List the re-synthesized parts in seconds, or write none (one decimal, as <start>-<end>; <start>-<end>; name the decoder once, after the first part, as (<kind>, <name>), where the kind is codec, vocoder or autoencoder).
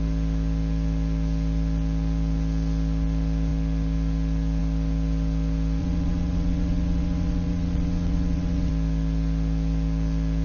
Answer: 5.8-8.7 (vocoder, WaveNeXt)